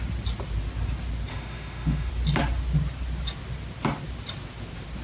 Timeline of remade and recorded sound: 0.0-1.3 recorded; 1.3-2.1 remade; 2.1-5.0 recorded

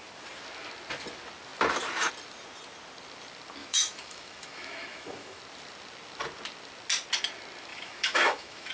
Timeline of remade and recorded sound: 0.0-3.6 recorded; 3.6-5.4 remade; 5.4-7.7 recorded; 7.7-8.7 remade

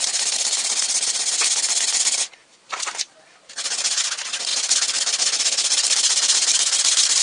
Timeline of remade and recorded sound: 0.0-7.2 recorded

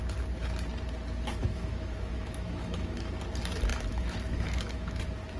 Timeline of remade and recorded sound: 0.0-1.4 recorded; 1.4-3.2 remade; 3.2-3.7 recorded; 3.7-5.0 remade; 5.0-5.4 recorded

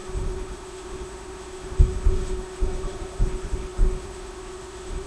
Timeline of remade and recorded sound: 0.0-5.1 remade